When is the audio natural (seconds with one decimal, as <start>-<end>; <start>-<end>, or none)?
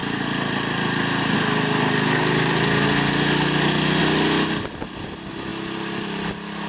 0.0-6.7